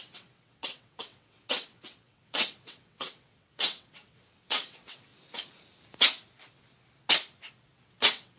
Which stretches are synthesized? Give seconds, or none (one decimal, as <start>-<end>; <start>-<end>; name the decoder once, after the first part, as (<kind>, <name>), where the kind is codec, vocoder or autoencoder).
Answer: 0.0-5.1 (vocoder, WaveNeXt); 7.9-8.4